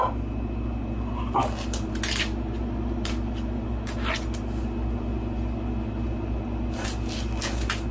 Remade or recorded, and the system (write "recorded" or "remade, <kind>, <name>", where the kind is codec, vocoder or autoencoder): recorded